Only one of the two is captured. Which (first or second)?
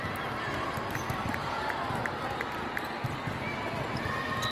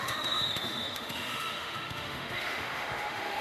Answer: first